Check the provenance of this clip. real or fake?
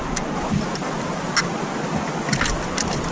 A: real